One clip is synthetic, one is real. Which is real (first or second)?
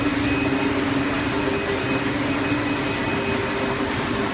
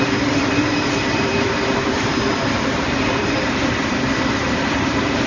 first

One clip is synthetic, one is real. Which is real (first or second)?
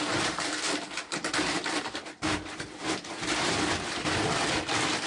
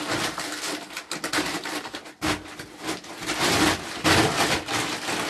second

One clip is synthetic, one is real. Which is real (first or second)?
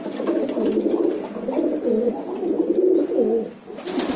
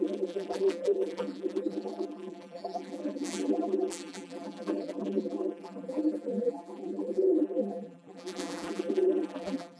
first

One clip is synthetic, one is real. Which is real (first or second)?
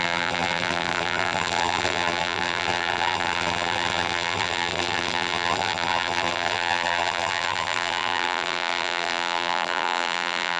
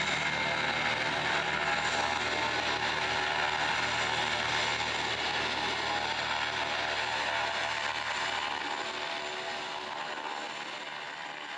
second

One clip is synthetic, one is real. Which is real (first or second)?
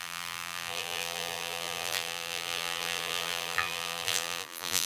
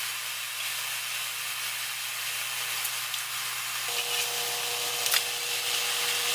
second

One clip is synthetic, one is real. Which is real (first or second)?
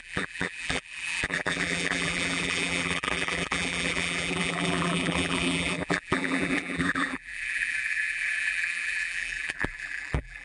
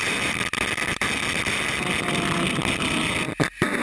second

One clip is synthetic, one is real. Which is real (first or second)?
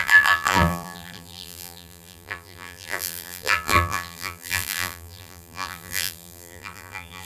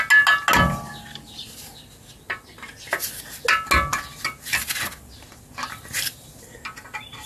second